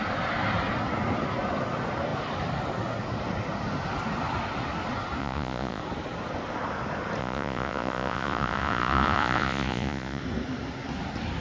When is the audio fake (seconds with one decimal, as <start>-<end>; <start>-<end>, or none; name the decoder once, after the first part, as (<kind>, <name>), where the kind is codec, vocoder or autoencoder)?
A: 5.2-5.8 (vocoder, Vocos); 7.2-10.2